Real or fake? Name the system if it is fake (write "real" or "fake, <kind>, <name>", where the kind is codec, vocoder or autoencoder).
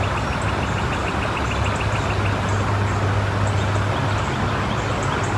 real